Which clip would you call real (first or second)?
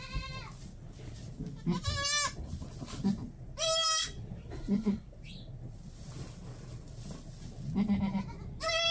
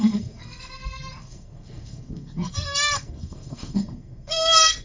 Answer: first